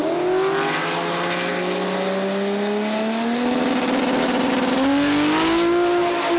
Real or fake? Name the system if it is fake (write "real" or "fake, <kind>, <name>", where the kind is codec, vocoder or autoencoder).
real